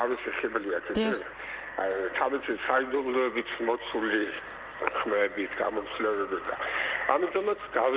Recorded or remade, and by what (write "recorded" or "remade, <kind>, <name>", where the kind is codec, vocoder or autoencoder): recorded